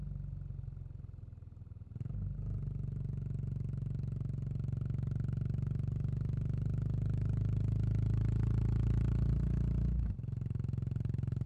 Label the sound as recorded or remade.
recorded